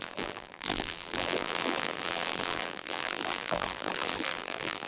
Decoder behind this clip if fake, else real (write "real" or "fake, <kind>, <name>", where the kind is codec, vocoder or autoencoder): fake, vocoder, BigVGAN v2